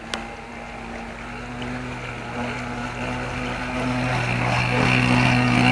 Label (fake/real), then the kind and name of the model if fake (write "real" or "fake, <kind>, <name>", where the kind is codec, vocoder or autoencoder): real